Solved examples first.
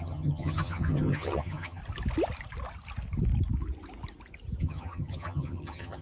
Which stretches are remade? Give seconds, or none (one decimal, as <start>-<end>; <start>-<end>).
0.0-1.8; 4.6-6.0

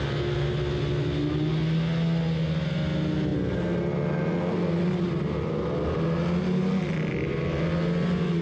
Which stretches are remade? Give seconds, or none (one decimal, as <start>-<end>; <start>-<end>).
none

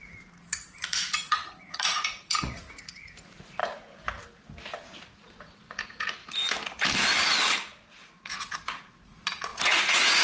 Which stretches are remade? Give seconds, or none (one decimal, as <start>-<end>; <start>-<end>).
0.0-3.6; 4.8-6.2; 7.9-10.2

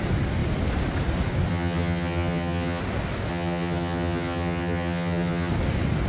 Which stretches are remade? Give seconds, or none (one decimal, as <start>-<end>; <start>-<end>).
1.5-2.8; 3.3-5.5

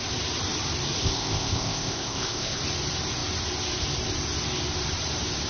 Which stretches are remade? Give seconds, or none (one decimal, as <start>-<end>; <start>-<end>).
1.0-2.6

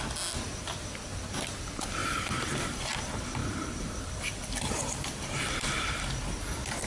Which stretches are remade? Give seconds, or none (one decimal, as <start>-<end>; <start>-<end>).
2.0-2.9; 3.4-6.0

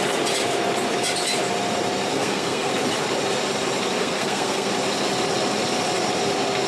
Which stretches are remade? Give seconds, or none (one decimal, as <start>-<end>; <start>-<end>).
2.1-2.7; 4.0-4.7

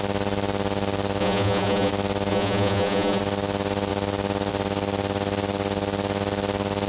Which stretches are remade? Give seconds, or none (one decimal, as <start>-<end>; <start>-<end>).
1.2-1.9; 2.3-3.2